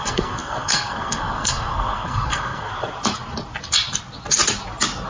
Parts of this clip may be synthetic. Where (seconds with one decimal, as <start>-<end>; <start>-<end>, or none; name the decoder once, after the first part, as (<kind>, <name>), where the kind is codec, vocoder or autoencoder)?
0.0-2.7 (codec, SNAC)